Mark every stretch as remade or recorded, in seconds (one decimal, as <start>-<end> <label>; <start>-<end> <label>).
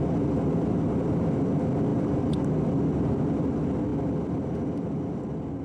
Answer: 0.0-5.6 recorded